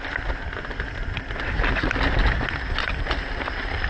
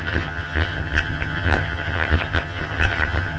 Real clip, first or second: first